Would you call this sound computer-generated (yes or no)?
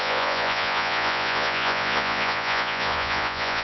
yes